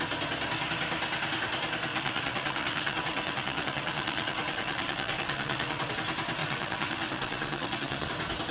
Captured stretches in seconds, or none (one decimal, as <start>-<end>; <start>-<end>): 0.0-1.9; 5.9-6.4; 8.1-8.5